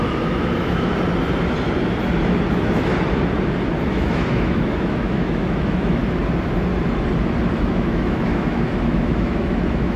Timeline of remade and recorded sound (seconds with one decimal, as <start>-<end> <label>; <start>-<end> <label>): 0.0-0.9 remade; 0.9-2.5 recorded; 2.5-2.9 remade; 2.9-3.9 recorded; 3.9-6.0 remade; 6.0-7.5 recorded; 7.5-10.0 remade